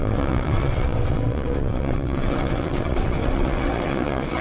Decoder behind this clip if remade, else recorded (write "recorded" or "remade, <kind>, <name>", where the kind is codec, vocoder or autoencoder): remade, vocoder, WaveNeXt